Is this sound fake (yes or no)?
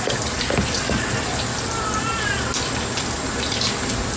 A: no